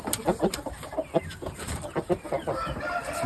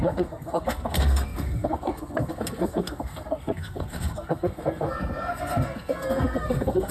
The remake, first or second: second